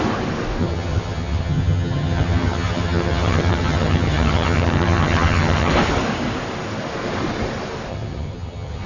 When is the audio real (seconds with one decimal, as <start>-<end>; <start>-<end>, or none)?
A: 0.0-0.6; 5.7-7.9

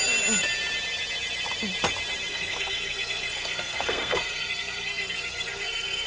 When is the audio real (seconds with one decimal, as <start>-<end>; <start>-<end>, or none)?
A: 0.0-2.3

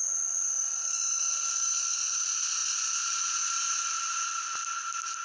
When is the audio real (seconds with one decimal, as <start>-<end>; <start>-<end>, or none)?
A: 0.0-2.6; 3.2-5.2

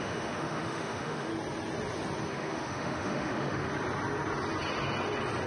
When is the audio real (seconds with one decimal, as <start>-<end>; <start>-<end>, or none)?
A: 1.3-2.3; 3.7-5.5

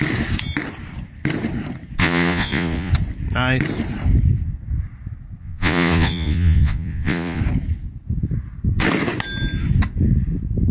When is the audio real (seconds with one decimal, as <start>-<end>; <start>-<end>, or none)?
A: 0.0-2.0; 2.9-5.4; 7.4-10.7

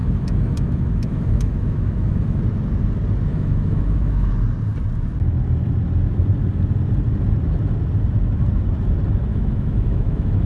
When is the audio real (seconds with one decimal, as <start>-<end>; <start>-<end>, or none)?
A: 2.4-3.3; 4.3-9.3